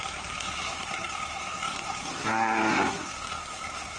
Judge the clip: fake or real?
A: fake